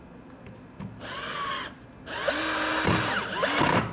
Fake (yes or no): no